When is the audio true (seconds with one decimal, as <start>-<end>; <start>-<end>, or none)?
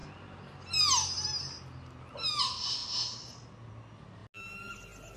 0.0-5.2